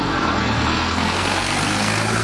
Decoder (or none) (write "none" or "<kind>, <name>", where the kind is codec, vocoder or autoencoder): codec, SNAC